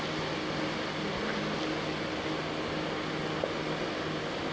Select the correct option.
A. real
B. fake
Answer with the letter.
A